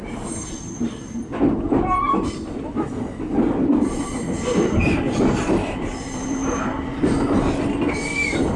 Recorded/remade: remade